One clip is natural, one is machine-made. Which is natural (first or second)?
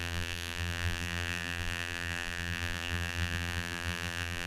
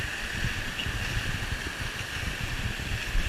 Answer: second